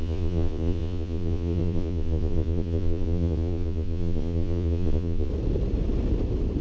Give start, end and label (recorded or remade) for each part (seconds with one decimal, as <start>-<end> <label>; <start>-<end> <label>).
0.0-5.3 remade; 5.3-6.6 recorded